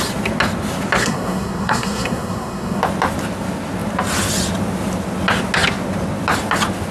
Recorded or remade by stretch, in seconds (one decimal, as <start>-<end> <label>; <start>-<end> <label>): 0.0-1.0 recorded; 1.0-2.8 remade; 2.8-6.9 recorded